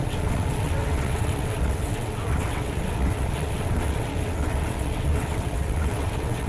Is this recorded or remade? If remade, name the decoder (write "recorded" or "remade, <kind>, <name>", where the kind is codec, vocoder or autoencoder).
remade, vocoder, WaveNeXt